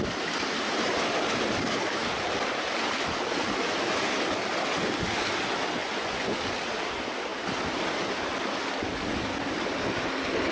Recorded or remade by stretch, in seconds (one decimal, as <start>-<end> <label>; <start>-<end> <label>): 0.0-5.8 recorded; 5.8-6.4 remade; 6.4-10.5 recorded